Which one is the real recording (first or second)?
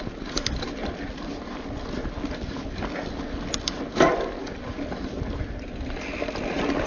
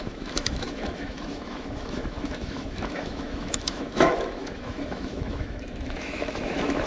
first